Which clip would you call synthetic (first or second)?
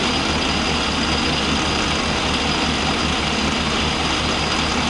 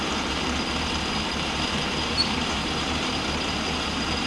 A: second